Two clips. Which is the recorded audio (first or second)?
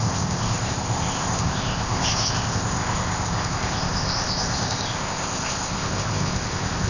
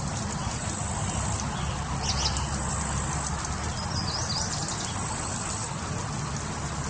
second